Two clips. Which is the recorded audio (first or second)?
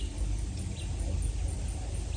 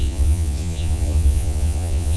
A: first